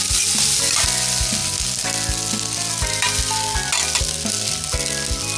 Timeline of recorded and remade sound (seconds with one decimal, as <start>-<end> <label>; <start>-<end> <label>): 0.0-5.4 recorded